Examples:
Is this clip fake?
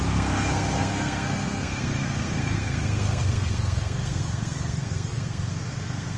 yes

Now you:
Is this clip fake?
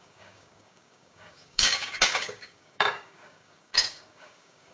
yes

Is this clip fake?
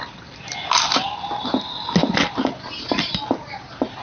no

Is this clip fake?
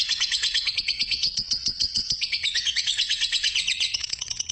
yes